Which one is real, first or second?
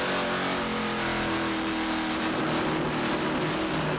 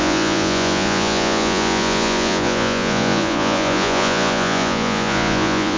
first